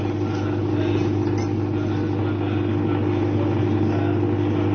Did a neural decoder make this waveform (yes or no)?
no